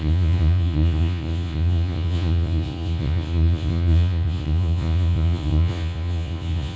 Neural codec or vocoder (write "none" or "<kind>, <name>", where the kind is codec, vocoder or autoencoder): vocoder, Vocos